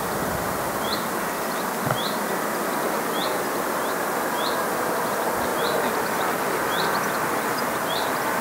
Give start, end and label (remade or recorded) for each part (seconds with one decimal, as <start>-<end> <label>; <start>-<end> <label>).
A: 0.0-8.4 recorded